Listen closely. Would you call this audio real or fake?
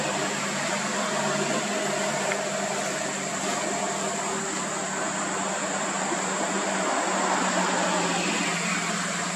real